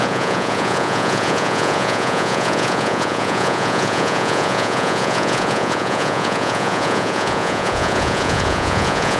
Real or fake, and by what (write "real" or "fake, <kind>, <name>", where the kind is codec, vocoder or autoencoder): fake, vocoder, Vocos